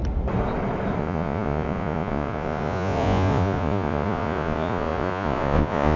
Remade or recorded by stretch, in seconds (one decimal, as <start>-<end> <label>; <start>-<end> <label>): 0.0-1.0 recorded; 1.0-6.0 remade